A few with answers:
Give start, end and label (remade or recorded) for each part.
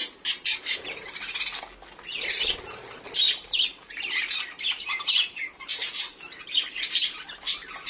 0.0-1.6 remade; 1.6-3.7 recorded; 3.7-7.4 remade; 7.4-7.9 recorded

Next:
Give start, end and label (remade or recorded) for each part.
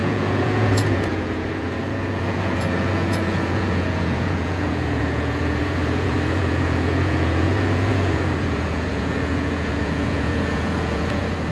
0.0-11.5 remade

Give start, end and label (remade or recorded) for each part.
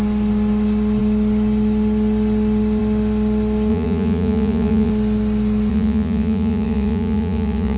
0.0-3.7 recorded; 3.7-4.9 remade; 4.9-5.7 recorded; 5.7-7.8 remade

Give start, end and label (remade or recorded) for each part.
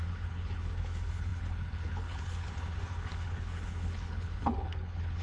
0.0-5.2 remade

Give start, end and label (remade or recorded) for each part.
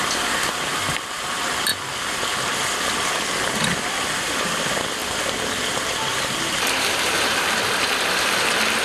0.0-1.7 remade; 1.7-4.4 recorded; 4.4-5.0 remade; 5.0-6.1 recorded; 6.1-8.8 remade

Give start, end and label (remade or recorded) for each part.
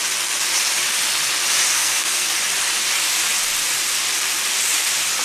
0.0-1.7 recorded; 1.7-2.4 remade; 2.4-5.2 recorded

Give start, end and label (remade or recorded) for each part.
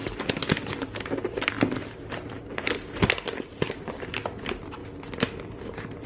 0.0-6.1 recorded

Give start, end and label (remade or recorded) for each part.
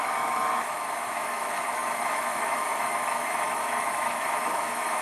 0.0-5.0 remade